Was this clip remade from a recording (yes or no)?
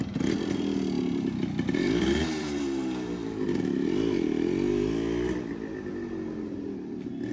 no